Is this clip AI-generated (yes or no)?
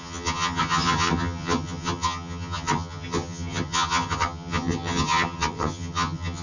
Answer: yes